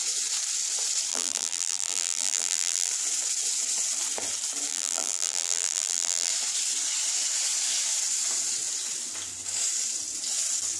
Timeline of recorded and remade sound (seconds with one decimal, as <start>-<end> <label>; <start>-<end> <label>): 0.0-1.1 recorded; 1.1-2.9 remade; 2.9-4.7 recorded; 4.7-6.3 remade; 6.3-10.8 recorded